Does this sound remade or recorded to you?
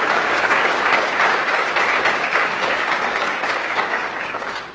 remade